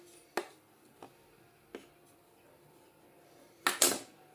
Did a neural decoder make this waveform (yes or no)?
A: no